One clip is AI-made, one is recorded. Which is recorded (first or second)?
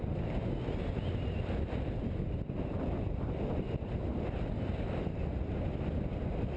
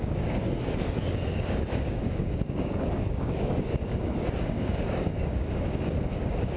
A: first